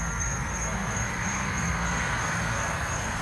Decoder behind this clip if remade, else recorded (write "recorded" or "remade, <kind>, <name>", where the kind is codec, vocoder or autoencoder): remade, codec, SNAC